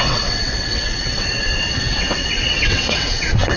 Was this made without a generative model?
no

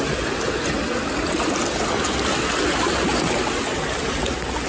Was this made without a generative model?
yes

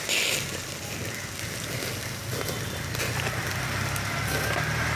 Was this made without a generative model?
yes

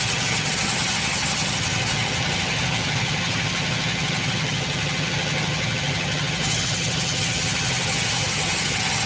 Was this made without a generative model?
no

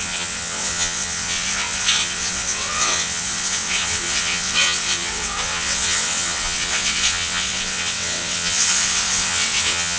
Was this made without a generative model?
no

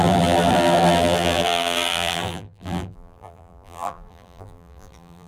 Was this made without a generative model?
no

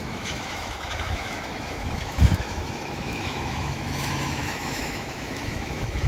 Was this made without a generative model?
no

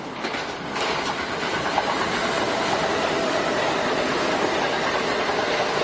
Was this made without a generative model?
yes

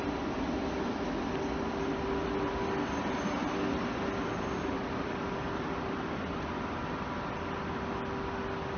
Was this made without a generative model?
yes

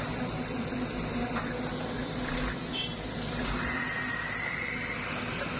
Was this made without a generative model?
no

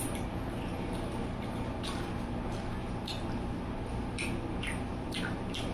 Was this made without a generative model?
yes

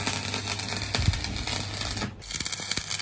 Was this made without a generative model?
yes